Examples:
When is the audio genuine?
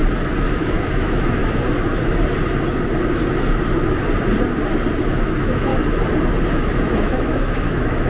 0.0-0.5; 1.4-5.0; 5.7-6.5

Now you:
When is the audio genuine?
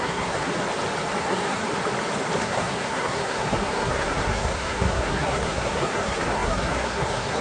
0.5-1.2; 1.6-2.4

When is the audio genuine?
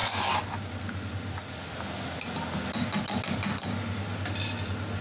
0.0-5.0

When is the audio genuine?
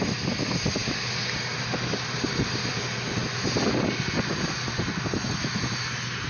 0.0-6.3